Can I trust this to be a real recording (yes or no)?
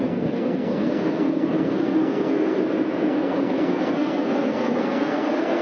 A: no